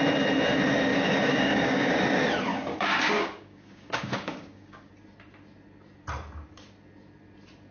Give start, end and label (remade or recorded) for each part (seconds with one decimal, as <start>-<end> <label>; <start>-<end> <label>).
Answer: 0.0-0.9 recorded; 0.9-1.9 remade; 1.9-2.5 recorded; 2.5-4.9 remade; 4.9-7.7 recorded